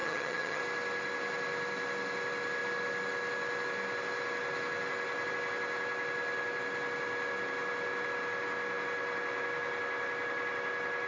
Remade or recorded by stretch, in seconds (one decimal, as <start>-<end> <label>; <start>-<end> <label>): 0.0-0.6 remade; 0.6-11.1 recorded